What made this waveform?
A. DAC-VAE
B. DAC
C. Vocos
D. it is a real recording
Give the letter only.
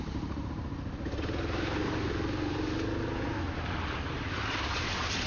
D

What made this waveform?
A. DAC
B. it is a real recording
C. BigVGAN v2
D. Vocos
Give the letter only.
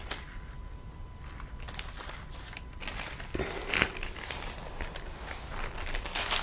B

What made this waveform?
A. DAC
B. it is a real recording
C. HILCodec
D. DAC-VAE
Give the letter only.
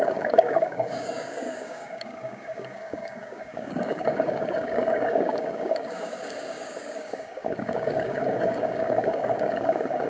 A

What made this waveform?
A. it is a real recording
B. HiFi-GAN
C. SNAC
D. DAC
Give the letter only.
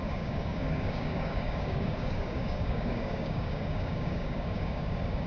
D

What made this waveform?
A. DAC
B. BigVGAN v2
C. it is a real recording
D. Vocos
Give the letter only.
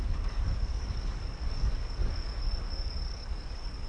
A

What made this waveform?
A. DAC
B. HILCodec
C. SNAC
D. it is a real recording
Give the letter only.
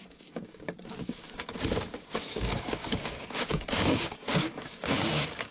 A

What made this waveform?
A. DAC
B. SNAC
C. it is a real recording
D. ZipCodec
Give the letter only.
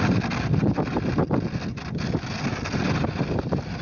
C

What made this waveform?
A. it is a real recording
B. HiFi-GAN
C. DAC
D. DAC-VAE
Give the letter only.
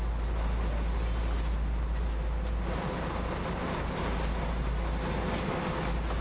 A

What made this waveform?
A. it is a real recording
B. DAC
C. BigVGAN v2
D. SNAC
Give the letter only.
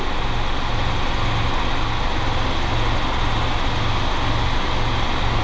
A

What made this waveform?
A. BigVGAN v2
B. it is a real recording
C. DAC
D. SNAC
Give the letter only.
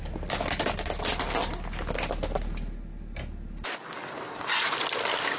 B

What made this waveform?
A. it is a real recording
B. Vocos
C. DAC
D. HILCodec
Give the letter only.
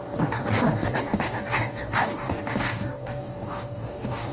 C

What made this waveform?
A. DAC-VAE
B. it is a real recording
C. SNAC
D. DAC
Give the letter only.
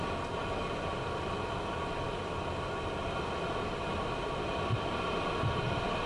B